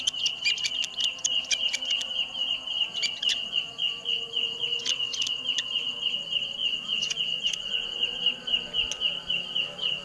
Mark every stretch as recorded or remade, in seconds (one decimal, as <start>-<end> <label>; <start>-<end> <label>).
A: 0.0-3.3 recorded; 3.3-4.8 remade; 4.8-6.6 recorded; 6.6-8.2 remade; 8.2-10.0 recorded